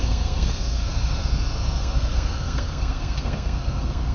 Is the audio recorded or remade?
remade